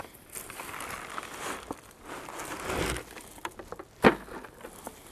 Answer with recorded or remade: recorded